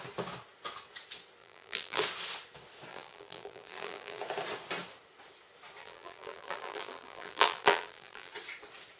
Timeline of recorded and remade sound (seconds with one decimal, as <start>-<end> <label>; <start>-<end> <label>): 0.0-1.4 recorded; 1.4-2.0 remade; 2.0-2.9 recorded; 2.9-4.2 remade; 4.2-5.8 recorded; 5.8-8.3 remade; 8.3-9.0 recorded